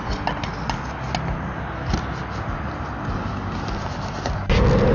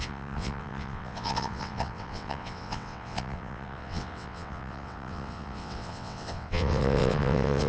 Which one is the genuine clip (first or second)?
first